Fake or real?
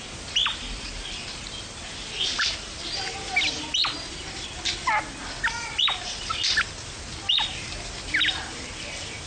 real